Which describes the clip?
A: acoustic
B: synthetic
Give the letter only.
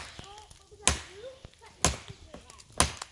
A